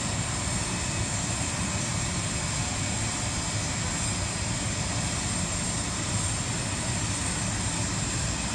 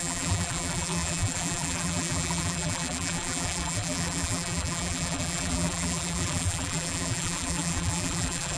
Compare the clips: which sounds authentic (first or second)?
first